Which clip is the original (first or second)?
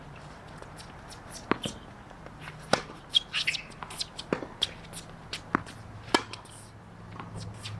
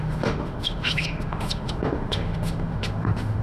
first